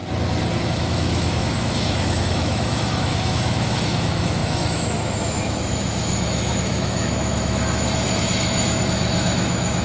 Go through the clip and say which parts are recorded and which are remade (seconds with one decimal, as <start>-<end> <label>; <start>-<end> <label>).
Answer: 0.0-0.7 recorded; 0.7-9.8 remade